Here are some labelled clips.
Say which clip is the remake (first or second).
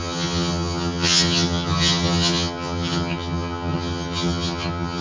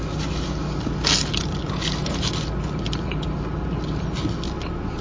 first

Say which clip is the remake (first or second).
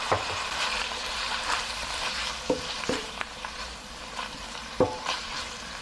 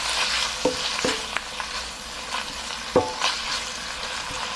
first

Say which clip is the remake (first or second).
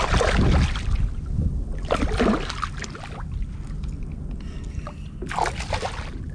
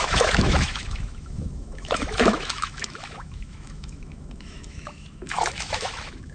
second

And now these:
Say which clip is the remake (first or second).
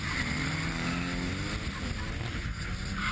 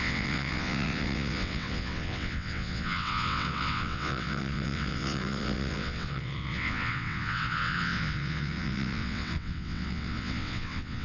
second